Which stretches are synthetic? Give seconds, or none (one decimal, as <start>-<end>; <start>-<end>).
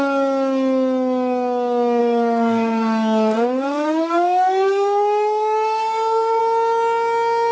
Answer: 2.0-6.4